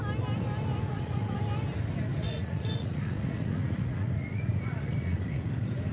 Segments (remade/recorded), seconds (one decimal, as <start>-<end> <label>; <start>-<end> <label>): 0.0-0.9 recorded; 0.9-1.4 remade; 1.4-2.2 recorded; 2.2-5.5 remade; 5.5-5.9 recorded